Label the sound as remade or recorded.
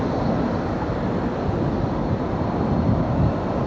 recorded